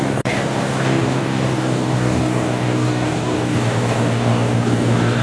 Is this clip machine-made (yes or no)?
yes